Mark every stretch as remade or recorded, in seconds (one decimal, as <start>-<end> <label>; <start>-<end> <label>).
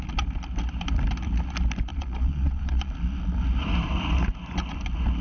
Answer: 0.0-1.9 recorded; 1.9-2.9 remade; 2.9-5.2 recorded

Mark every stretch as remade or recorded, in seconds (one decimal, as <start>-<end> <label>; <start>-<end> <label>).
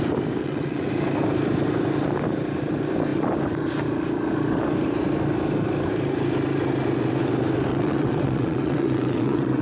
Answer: 0.0-0.4 recorded; 0.4-0.9 remade; 0.9-7.7 recorded; 7.7-9.6 remade